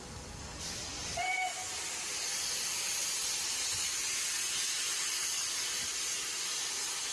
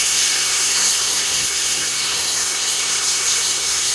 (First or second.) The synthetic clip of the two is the second